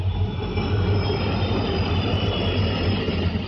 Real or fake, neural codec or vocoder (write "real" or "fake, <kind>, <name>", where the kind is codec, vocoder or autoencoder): real